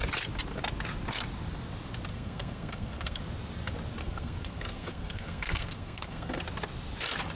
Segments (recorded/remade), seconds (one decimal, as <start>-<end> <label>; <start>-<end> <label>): 0.0-2.1 recorded; 2.1-3.2 remade; 3.2-4.0 recorded; 4.0-6.4 remade; 6.4-7.4 recorded